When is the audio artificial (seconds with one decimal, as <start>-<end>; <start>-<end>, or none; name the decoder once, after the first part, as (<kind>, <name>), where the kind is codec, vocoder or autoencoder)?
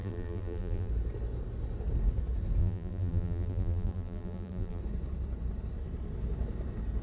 0.0-0.9 (vocoder, BigVGAN v2); 2.6-4.8